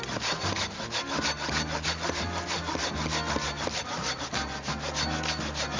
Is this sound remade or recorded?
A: recorded